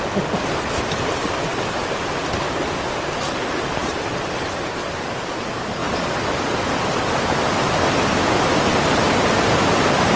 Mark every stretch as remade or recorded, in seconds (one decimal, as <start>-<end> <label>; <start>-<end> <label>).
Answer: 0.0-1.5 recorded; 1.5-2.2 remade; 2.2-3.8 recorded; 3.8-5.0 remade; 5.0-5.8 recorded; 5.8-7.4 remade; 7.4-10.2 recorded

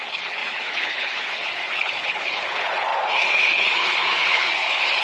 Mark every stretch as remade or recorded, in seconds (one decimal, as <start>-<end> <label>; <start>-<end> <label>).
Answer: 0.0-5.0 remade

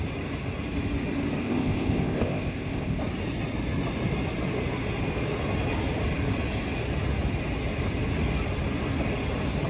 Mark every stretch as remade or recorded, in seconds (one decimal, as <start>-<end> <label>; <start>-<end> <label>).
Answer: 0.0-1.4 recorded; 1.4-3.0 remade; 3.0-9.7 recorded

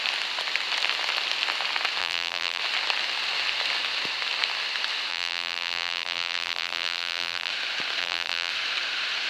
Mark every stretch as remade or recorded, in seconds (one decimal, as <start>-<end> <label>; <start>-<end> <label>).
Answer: 0.0-2.0 recorded; 2.0-2.6 remade; 2.6-5.1 recorded; 5.1-7.5 remade; 7.5-8.0 recorded; 8.0-8.5 remade; 8.5-9.3 recorded

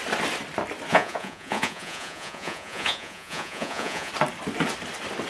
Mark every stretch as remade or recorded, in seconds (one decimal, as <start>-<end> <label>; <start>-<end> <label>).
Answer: 0.0-0.9 recorded; 0.9-4.1 remade; 4.1-5.3 recorded

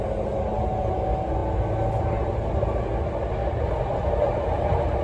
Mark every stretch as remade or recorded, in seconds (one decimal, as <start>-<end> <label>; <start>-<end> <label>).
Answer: 0.0-5.0 recorded